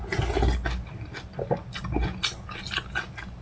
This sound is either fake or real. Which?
real